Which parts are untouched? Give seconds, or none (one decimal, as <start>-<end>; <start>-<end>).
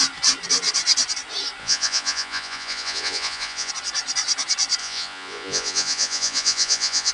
0.0-1.6; 3.7-4.8